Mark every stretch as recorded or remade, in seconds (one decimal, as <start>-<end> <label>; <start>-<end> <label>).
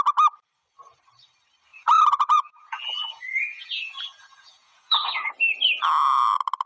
0.0-1.7 recorded; 1.7-5.3 remade; 5.3-6.7 recorded